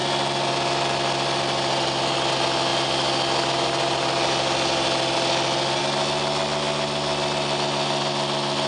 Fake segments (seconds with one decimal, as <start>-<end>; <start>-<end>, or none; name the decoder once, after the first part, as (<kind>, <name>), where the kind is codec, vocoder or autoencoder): none